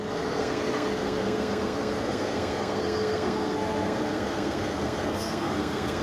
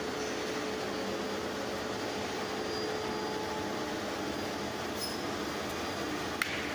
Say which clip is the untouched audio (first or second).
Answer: second